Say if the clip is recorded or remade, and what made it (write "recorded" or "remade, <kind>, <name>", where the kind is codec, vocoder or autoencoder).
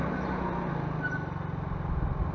recorded